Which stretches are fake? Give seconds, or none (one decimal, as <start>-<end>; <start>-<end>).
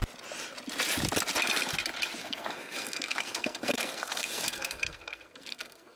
2.2-6.0